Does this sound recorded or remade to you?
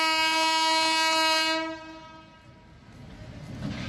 recorded